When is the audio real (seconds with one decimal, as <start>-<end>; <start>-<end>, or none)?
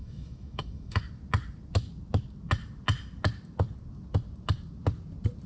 1.0-5.5